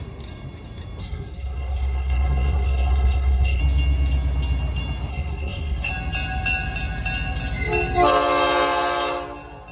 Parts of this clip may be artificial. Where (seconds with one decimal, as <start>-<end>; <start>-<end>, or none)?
1.0-3.6; 5.1-5.9